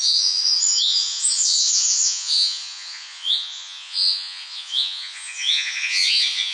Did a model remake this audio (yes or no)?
yes